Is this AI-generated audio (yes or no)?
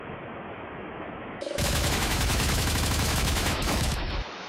yes